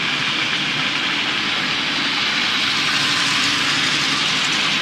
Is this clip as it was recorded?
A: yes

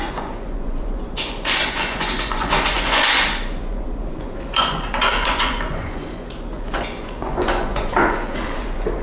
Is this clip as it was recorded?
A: no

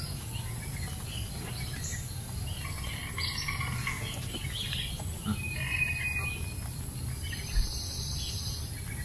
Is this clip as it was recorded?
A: yes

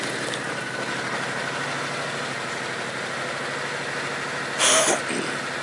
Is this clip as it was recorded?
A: yes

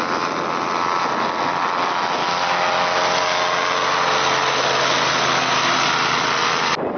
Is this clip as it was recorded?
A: yes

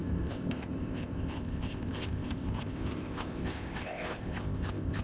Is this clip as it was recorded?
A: no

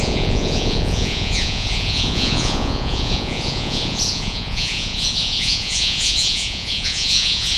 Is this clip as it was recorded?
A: no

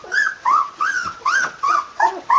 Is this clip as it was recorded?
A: no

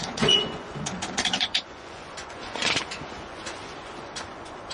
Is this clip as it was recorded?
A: no